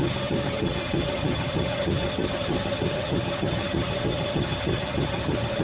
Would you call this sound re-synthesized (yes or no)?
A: yes